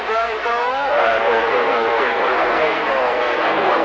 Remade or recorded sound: remade